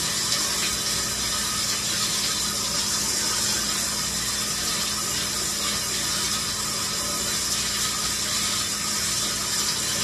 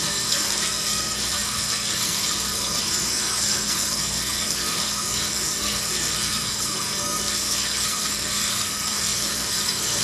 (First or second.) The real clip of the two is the first